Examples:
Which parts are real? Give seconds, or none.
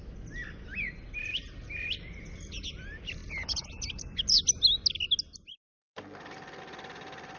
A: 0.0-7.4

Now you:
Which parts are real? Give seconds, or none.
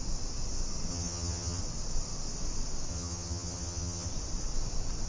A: 0.0-0.9; 1.6-2.9; 4.1-5.1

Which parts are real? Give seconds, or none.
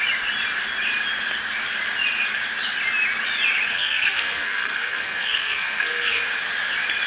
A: 0.0-3.7; 6.2-7.1